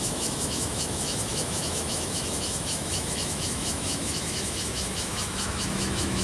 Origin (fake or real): fake